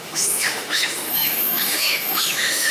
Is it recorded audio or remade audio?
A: remade